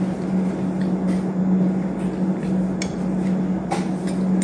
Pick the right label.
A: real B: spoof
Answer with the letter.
A